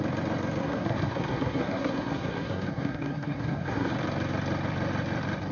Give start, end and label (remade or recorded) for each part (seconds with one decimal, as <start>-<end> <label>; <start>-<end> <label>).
0.0-0.6 recorded; 0.6-3.9 remade; 3.9-5.5 recorded